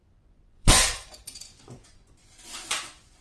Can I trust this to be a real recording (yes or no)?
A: no